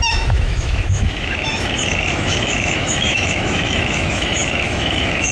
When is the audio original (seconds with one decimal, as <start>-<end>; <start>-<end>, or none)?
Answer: none